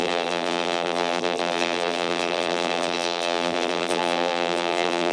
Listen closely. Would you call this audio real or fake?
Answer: fake